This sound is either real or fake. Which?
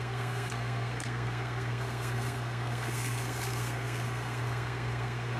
fake